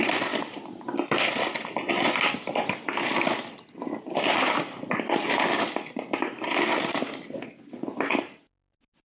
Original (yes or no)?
yes